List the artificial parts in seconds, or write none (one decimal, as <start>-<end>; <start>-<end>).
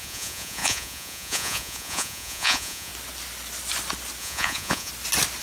0.0-2.9; 4.2-4.9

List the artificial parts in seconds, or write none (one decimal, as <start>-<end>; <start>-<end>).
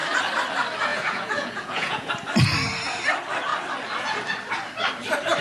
0.9-2.1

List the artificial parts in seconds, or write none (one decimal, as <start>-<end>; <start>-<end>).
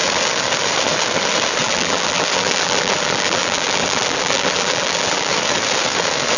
1.6-5.3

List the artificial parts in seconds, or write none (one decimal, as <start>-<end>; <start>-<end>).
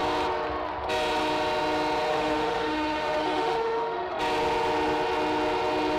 2.1-4.2